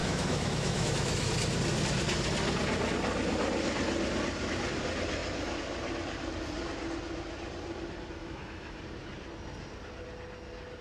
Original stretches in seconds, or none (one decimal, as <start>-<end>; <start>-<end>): 1.3-8.2; 8.8-10.8